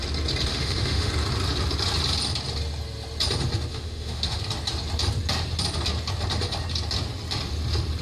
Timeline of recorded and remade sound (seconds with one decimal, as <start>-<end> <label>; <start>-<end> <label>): 0.0-0.5 recorded; 0.5-1.1 remade; 1.1-3.7 recorded; 3.7-4.4 remade; 4.4-8.0 recorded